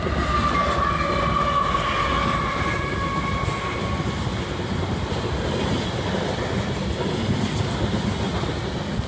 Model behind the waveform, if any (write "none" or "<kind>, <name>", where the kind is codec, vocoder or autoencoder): none